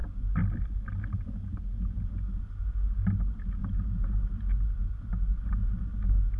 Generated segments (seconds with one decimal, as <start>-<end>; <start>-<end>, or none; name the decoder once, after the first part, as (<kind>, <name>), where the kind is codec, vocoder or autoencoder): none